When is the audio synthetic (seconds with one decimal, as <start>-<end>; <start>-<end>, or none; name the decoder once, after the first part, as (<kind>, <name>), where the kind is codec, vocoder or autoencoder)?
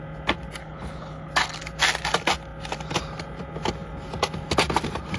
0.6-1.3 (codec, HILCodec)